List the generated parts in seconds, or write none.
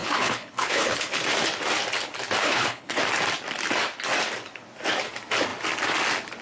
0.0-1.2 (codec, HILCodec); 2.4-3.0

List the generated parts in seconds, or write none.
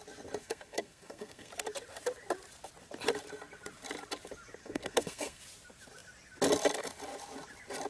0.4-1.5 (codec, SNAC); 4.6-5.4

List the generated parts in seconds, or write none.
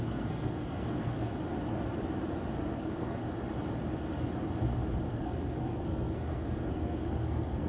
0.0-1.3 (codec, SNAC); 2.6-3.2; 5.1-7.7